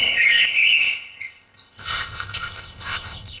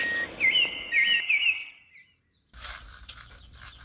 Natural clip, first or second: second